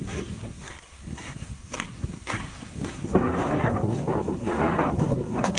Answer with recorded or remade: remade